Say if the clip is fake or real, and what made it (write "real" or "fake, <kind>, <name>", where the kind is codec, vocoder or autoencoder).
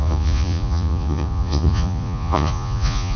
fake, vocoder, Vocos